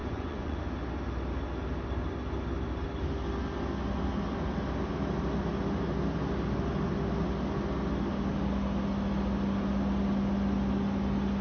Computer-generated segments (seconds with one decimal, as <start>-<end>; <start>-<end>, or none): 0.0-0.6